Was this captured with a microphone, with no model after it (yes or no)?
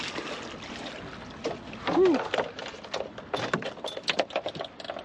yes